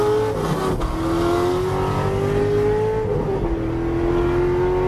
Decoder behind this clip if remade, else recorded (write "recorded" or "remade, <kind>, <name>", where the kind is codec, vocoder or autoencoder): recorded